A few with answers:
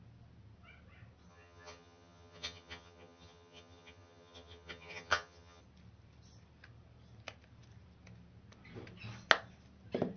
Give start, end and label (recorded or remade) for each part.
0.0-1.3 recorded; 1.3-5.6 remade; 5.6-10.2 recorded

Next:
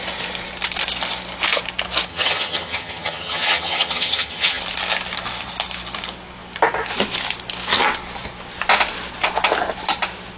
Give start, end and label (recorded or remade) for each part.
0.0-2.1 recorded; 2.1-4.6 remade; 4.6-10.4 recorded

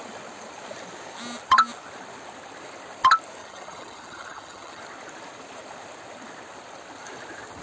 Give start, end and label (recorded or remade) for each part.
0.0-3.4 recorded; 3.4-4.8 remade; 4.8-7.6 recorded

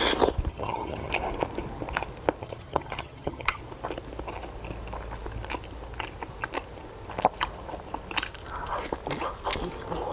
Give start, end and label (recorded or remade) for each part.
0.0-0.5 recorded; 0.5-1.1 remade; 1.1-2.4 recorded; 2.4-3.6 remade; 3.6-10.1 recorded